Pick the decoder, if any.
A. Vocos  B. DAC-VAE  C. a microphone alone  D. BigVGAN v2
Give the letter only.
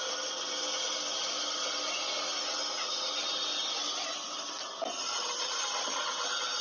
C